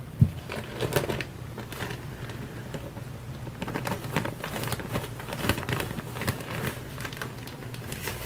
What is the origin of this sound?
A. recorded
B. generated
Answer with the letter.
A